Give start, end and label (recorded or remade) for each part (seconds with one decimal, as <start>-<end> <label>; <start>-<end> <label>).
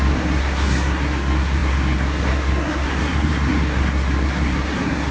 0.0-5.1 remade